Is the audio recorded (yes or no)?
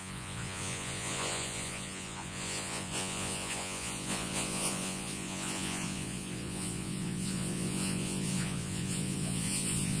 no